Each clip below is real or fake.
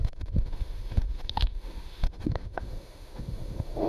fake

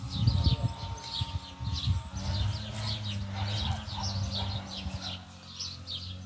real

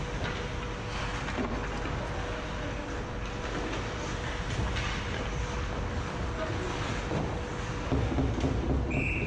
real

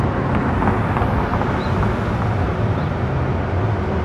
real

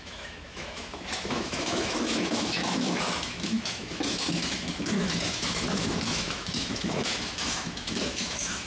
fake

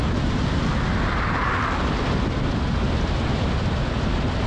real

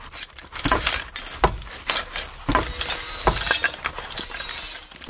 real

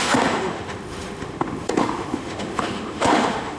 fake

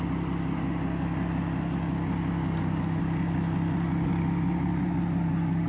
real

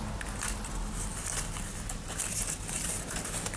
real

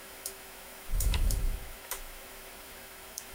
fake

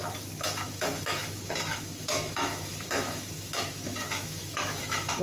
fake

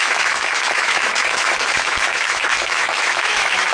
fake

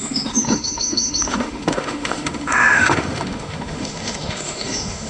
fake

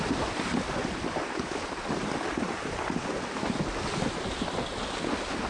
real